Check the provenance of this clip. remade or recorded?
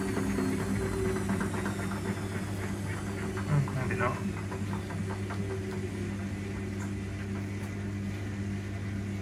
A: recorded